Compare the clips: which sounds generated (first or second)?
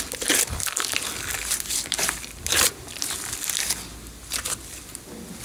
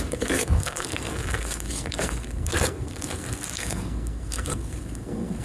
second